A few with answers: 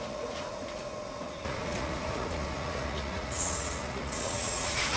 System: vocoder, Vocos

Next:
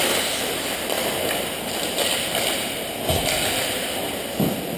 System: none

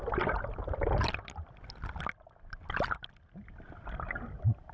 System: none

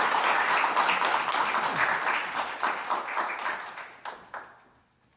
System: none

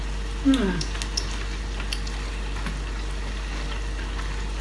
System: none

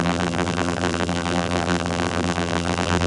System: vocoder, BigVGAN v2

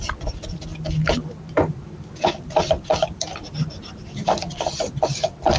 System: vocoder, BigVGAN v2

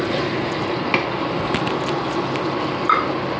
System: none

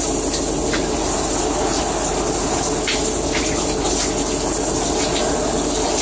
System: none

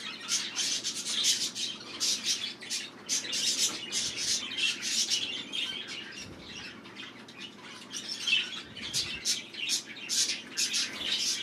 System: none